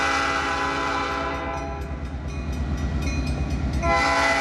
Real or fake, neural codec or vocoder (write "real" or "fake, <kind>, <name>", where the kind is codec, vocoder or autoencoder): real